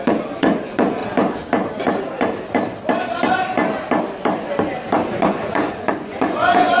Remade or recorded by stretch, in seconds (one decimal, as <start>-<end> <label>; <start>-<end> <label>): 0.0-1.0 remade; 1.0-5.1 recorded; 5.1-6.8 remade